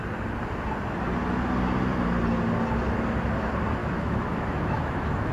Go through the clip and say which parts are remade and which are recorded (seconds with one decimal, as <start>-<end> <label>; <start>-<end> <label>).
0.0-3.8 recorded; 3.8-5.3 remade